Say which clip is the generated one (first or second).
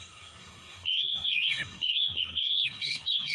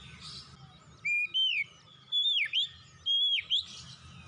first